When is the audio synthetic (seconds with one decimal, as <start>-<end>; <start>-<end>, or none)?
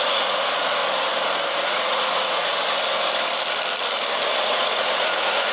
0.0-0.8; 1.5-2.6; 4.4-5.5